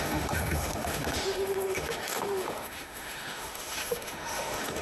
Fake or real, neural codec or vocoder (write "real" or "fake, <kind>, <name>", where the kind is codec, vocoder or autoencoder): fake, autoencoder, DAC-VAE